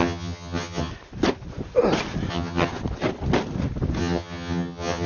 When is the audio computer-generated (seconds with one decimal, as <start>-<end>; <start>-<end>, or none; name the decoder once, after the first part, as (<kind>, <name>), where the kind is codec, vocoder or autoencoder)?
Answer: 0.0-0.9 (vocoder, HiFi-GAN); 2.3-2.7; 4.0-5.1